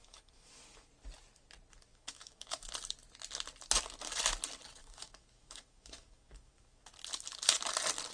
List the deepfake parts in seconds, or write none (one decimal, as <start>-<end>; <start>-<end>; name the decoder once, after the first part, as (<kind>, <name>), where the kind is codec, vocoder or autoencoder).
0.0-0.9 (autoencoder, DAC-VAE); 1.9-2.7; 4.8-6.8